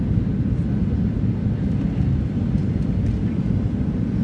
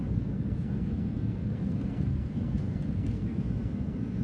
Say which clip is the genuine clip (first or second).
first